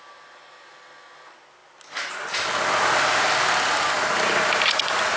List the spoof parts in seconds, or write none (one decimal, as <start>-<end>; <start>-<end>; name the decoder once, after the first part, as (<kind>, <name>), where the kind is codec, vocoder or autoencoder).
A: none